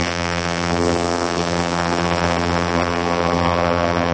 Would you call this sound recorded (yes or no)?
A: no